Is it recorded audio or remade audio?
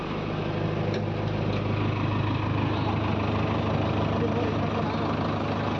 recorded